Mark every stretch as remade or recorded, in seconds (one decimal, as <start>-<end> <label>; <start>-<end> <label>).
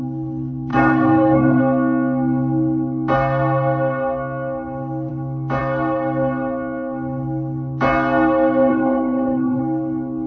0.0-0.7 recorded; 0.7-1.6 remade; 1.6-8.7 recorded; 8.7-9.6 remade; 9.6-10.3 recorded